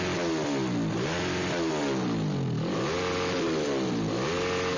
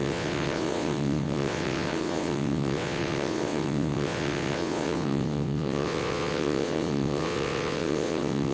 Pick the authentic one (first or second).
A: first